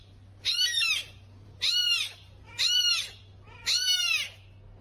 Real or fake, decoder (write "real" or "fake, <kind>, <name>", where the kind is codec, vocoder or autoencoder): real